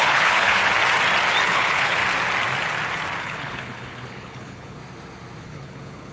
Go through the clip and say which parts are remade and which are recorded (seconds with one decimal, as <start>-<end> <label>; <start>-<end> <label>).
0.0-0.6 remade; 0.6-1.4 recorded; 1.4-2.0 remade; 2.0-3.2 recorded; 3.2-4.8 remade; 4.8-5.4 recorded; 5.4-6.1 remade